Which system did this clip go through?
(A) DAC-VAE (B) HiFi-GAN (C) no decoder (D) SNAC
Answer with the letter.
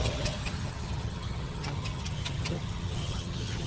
B